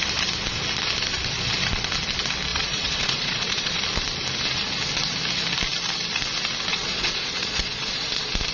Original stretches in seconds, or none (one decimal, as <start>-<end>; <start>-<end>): 0.0-2.5; 3.8-6.7; 8.1-8.5